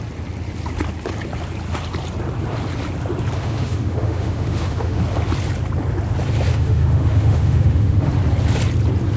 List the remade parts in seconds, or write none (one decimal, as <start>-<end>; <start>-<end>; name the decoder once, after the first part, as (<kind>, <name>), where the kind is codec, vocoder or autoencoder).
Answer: 3.4-5.0 (autoencoder, DAC-VAE); 6.5-8.1